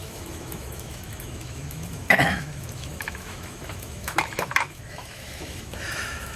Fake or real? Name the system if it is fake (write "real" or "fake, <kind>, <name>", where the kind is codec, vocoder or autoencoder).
fake, autoencoder, DAC-VAE